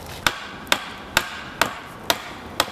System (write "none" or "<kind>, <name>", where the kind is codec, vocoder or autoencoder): none